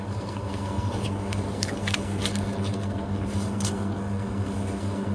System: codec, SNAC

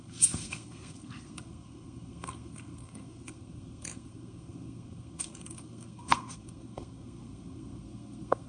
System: codec, SNAC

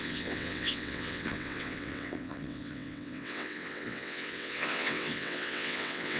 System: vocoder, WaveNeXt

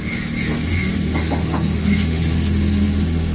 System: autoencoder, DAC-VAE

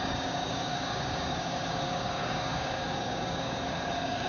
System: codec, DAC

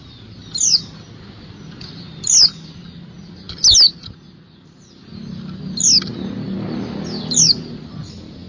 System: none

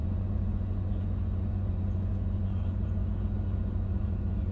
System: vocoder, Vocos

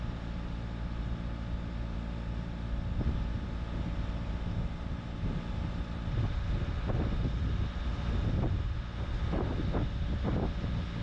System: none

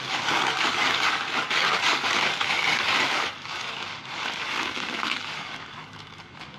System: codec, DAC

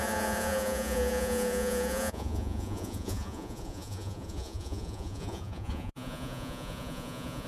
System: vocoder, Vocos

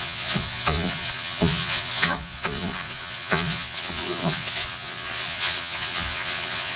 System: vocoder, Vocos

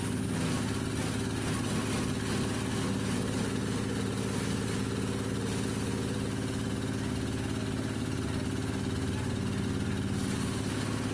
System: none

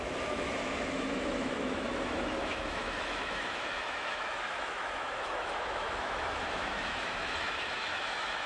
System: autoencoder, DAC-VAE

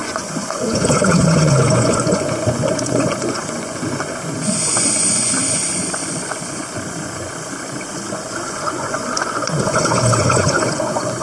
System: vocoder, Vocos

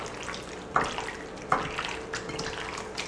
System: none